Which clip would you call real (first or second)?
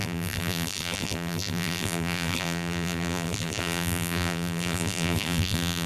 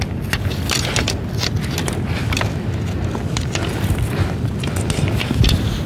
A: second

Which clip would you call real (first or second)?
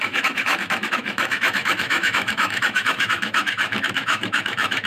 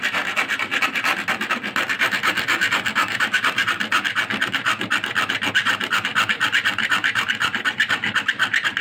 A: second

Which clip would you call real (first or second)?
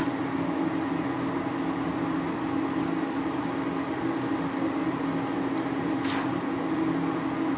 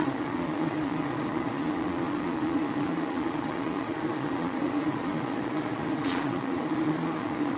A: first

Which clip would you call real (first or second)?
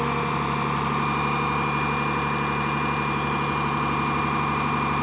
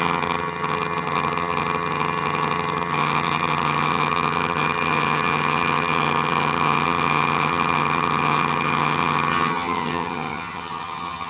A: first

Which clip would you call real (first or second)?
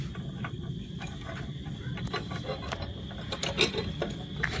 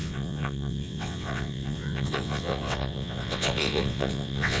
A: first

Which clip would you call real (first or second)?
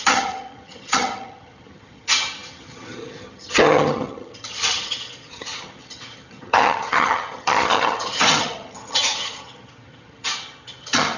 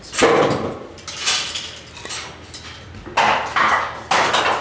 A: second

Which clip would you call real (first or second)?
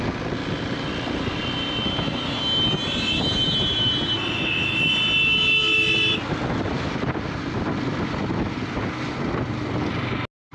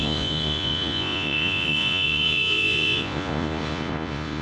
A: first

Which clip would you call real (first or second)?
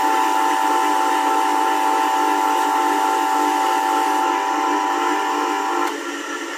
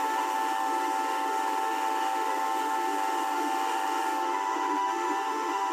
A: first